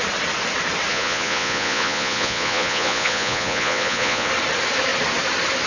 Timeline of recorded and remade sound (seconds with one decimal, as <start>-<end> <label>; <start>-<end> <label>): 0.0-0.9 recorded; 0.9-4.3 remade; 4.3-5.7 recorded